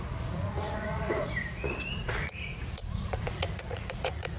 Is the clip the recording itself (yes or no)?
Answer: no